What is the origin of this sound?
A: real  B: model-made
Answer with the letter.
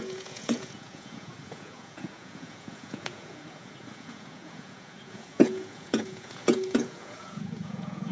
B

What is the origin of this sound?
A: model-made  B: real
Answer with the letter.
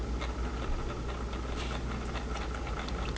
B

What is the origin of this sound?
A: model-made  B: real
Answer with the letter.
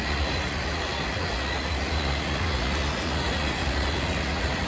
A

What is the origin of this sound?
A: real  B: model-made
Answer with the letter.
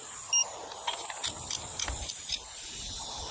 A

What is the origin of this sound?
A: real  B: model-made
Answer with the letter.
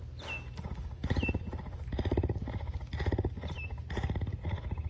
A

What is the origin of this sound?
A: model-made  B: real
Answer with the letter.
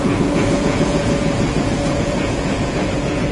A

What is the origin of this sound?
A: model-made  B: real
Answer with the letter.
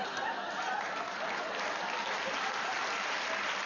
B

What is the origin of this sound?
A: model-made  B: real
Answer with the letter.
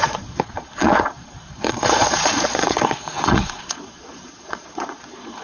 A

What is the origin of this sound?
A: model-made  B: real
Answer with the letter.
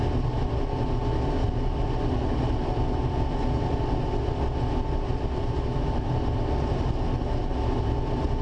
B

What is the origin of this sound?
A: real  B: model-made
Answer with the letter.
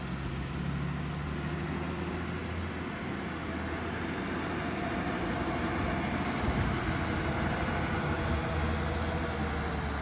A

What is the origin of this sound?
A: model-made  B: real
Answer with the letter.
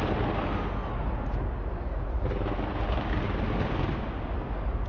B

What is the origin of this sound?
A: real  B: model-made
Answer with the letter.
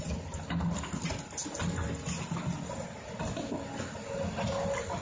A